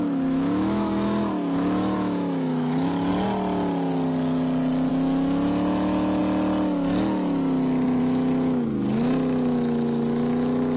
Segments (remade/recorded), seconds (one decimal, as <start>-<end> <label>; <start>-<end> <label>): 0.0-3.1 remade; 3.1-4.9 recorded; 4.9-6.2 remade; 6.2-8.0 recorded; 8.0-10.8 remade